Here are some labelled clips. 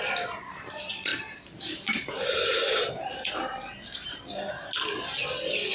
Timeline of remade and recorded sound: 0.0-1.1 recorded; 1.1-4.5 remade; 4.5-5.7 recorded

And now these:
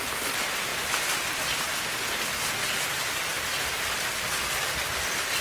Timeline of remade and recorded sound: 0.0-5.4 recorded